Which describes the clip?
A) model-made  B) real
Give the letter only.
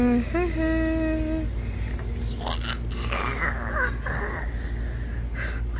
B